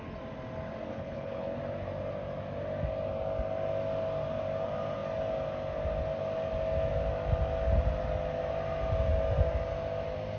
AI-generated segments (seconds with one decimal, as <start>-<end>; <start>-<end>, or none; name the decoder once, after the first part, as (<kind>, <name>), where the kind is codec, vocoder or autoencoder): 0.9-1.6 (codec, HILCodec)